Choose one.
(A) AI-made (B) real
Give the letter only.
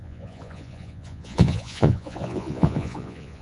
A